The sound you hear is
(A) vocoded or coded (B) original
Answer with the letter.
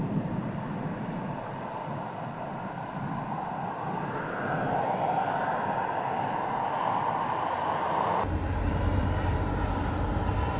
B